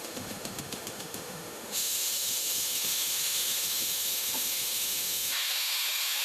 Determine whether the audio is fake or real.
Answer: fake